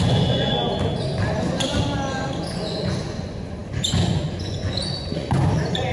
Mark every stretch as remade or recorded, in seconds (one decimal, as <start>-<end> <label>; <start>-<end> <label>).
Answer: 0.0-0.6 remade; 0.6-2.4 recorded; 2.4-5.9 remade